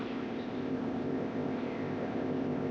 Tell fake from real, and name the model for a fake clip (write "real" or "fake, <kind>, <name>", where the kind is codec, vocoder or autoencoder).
fake, codec, ZipCodec